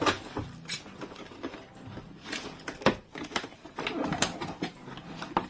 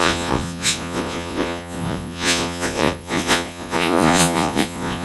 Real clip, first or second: first